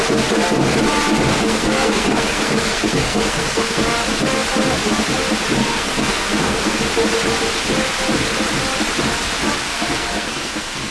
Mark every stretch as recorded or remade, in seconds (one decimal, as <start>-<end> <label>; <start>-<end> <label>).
0.0-1.3 recorded; 1.3-3.8 remade; 3.8-5.6 recorded; 5.6-6.8 remade; 6.8-9.7 recorded; 9.7-10.9 remade